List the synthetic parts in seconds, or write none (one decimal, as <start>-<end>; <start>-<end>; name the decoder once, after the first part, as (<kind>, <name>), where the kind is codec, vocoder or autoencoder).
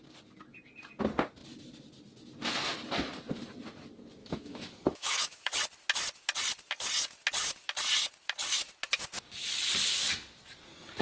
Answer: 4.2-5.5 (autoencoder, DAC-VAE)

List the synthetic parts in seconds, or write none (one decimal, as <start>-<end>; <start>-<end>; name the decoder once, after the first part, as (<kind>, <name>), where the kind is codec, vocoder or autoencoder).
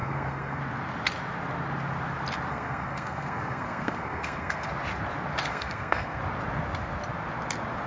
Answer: 0.0-0.6 (codec, SNAC); 2.5-4.7; 5.5-6.2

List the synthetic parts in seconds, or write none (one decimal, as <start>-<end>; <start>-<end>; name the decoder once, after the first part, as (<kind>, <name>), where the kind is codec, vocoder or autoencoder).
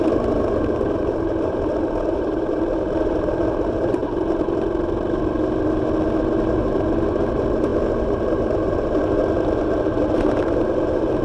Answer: 0.0-4.0 (vocoder, BigVGAN v2); 6.5-9.0; 10.0-11.2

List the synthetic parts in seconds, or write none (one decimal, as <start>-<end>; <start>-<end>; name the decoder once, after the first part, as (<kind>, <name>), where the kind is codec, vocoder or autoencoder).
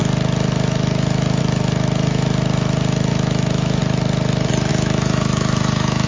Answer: 3.1-3.8 (autoencoder, DAC-VAE); 4.7-6.1